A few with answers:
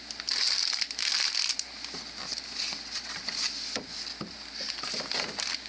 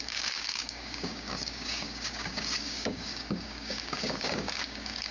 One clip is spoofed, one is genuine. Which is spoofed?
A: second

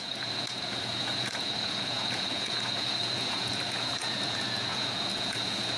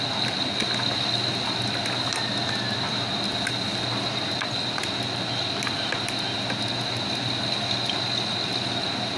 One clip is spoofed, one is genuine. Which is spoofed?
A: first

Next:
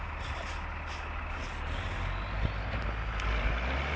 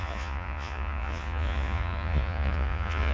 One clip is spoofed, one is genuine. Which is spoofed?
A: second